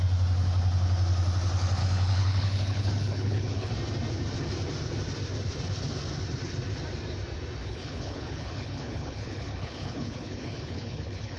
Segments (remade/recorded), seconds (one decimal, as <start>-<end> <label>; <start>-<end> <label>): 0.0-1.8 recorded; 1.8-3.7 remade; 3.7-7.6 recorded; 7.6-11.4 remade